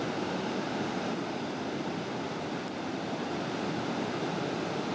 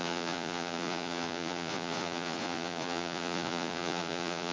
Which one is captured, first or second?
first